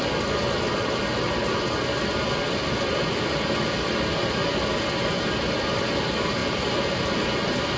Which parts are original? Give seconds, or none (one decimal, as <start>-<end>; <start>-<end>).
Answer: 0.0-6.4; 7.0-7.8